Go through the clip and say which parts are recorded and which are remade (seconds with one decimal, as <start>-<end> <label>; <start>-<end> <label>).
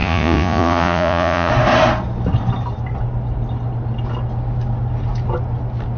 0.0-1.5 remade; 1.5-6.0 recorded